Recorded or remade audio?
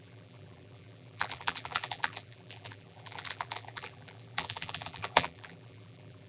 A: remade